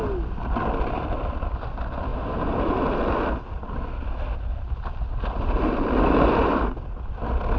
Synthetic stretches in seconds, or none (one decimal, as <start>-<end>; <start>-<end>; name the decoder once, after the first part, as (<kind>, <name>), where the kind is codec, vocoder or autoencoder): none